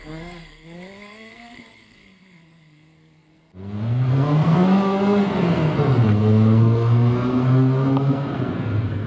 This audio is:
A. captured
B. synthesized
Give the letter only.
B